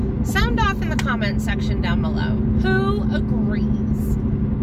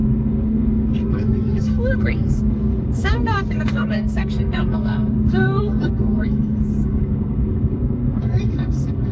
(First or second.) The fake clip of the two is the second